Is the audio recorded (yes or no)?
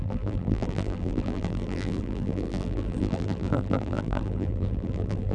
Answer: no